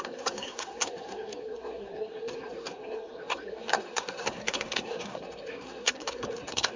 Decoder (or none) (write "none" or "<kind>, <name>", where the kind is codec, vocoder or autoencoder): codec, SNAC